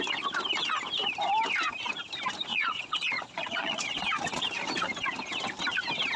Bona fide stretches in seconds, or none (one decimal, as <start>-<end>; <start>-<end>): 0.0-2.5; 4.0-6.2